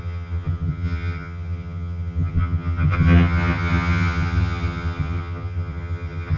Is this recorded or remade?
remade